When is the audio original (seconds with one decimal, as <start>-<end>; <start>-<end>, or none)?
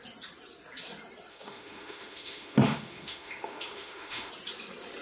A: 0.0-1.3; 4.3-5.0